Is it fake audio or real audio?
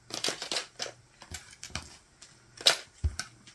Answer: real